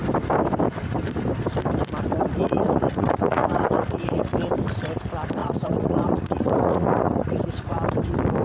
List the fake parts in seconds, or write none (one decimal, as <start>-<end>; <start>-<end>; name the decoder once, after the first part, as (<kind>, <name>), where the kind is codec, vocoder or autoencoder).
2.4-4.3 (vocoder, Vocos); 5.4-7.4